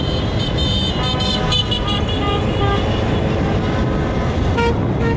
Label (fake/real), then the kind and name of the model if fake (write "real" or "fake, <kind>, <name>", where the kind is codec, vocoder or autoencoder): real